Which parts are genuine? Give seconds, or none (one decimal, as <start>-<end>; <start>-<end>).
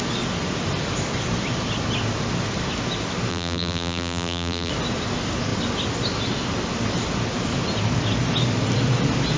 0.0-3.3; 4.7-9.4